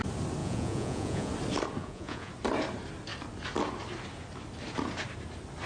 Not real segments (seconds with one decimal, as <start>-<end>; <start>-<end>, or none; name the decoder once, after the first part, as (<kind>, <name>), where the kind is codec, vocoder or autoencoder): 0.4-1.3 (vocoder, Vocos); 1.8-2.3